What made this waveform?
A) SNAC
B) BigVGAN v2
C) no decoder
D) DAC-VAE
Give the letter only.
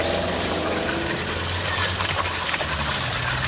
C